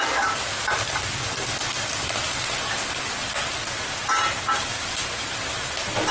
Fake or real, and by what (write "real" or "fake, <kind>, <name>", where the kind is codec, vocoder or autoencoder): real